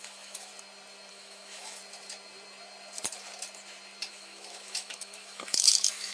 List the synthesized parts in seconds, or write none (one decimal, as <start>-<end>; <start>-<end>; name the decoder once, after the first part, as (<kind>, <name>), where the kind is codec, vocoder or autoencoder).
0.0-0.5 (autoencoder, DAC-VAE); 1.1-1.8; 4.1-6.1